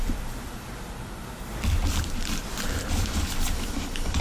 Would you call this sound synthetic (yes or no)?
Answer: yes